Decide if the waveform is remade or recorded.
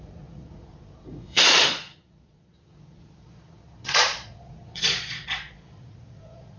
remade